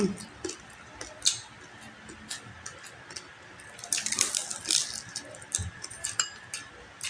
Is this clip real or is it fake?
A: real